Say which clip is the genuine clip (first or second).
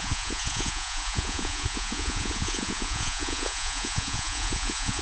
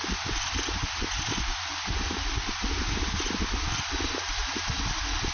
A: second